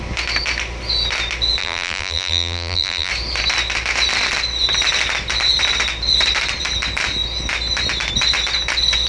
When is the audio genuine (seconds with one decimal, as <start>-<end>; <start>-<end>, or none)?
0.0-1.6; 3.1-9.1